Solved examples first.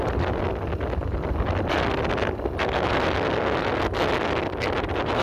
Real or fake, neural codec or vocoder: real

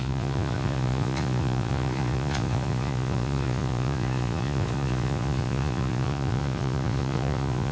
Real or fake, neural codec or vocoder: fake, vocoder, Vocos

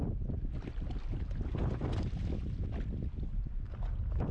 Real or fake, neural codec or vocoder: real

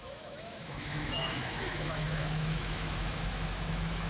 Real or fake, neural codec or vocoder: fake, autoencoder, DAC-VAE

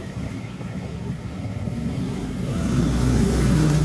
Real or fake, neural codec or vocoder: fake, codec, SNAC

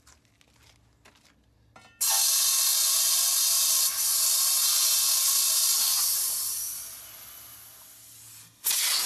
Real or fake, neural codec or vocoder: real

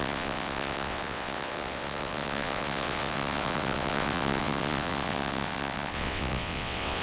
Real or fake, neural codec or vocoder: fake, vocoder, WaveNeXt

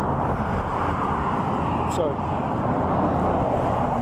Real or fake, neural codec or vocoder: real